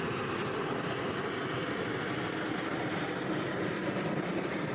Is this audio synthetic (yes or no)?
no